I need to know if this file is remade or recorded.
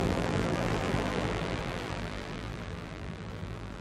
remade